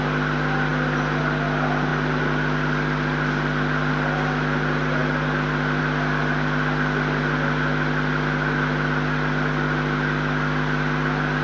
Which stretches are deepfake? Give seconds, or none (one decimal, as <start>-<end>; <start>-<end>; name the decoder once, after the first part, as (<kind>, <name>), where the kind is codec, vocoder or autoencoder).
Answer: none